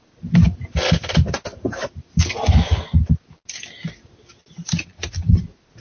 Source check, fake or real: real